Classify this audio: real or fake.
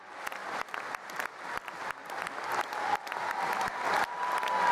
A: real